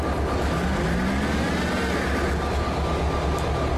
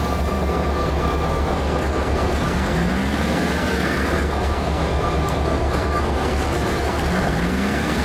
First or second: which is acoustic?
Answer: first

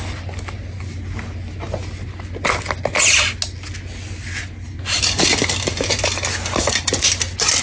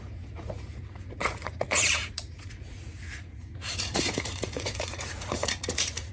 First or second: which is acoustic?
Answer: first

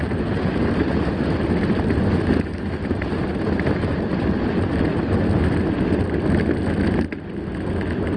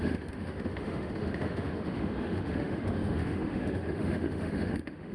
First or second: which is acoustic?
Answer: first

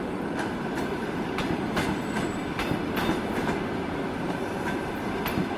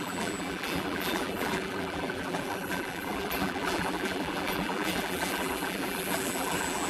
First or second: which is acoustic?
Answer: first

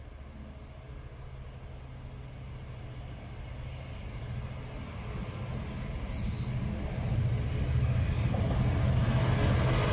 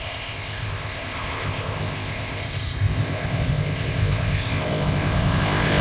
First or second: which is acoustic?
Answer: first